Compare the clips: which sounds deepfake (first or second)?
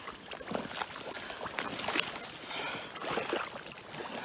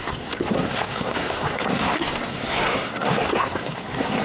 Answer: second